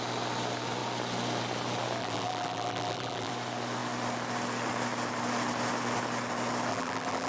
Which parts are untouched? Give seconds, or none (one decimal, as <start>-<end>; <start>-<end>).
0.0-2.0; 3.3-6.7